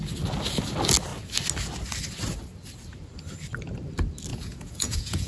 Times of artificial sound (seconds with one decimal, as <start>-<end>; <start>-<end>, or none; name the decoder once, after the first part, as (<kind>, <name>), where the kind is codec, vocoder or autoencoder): 4.3-5.3 (vocoder, Vocos)